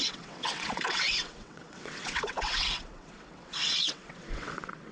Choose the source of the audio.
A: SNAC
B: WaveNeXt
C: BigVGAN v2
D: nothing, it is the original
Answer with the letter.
B